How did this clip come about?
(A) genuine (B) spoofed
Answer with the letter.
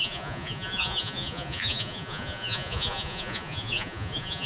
B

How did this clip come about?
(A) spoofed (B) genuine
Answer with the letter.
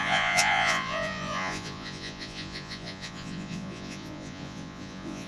A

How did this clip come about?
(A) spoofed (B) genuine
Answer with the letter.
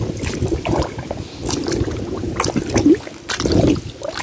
B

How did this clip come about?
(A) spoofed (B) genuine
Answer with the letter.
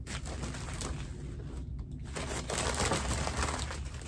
B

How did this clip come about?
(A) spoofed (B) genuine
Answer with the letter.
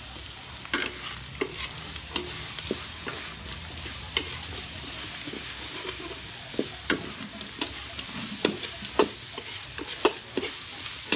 B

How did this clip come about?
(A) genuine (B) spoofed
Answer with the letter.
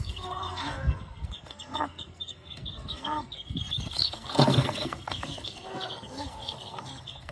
B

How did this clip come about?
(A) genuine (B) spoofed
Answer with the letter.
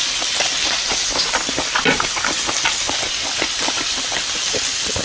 A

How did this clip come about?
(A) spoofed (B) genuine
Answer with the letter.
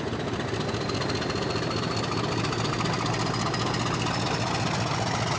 B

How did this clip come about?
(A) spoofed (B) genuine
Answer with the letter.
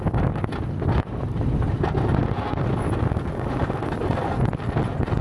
B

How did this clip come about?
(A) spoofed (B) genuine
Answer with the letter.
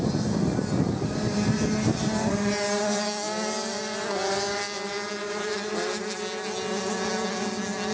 B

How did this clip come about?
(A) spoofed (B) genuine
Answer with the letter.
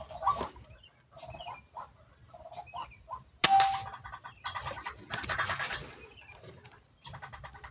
B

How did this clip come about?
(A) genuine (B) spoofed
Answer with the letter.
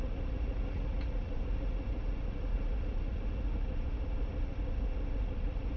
B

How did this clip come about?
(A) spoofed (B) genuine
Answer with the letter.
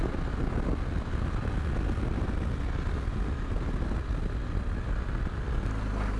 B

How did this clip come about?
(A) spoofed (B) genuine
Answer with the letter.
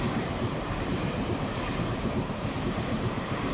A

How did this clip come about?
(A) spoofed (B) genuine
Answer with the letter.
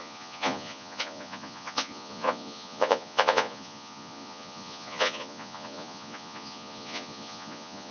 A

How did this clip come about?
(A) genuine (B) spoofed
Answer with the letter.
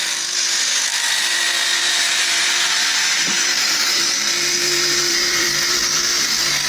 B